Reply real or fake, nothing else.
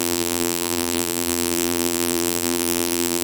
fake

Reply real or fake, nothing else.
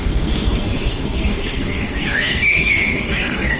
fake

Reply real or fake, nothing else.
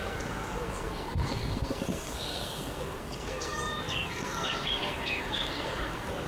fake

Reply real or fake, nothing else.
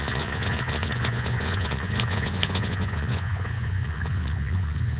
fake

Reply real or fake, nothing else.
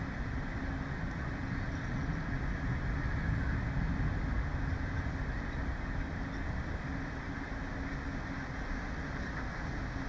real